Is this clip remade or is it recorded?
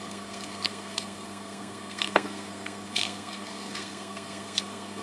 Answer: remade